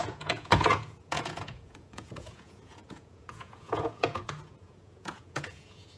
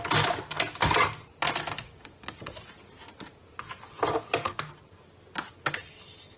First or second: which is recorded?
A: second